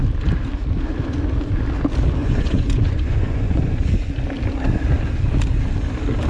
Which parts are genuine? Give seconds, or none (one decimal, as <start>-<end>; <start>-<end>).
0.0-2.2; 3.9-6.3